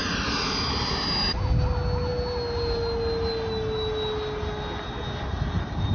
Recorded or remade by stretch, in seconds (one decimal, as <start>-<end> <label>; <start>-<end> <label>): 0.0-5.9 recorded